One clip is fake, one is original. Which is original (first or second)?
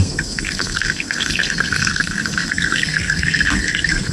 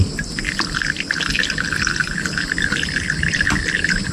second